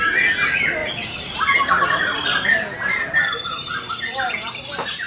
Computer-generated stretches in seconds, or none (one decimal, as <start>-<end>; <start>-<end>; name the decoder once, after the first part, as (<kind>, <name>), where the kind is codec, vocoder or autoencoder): none